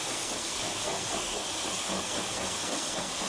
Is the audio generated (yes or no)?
yes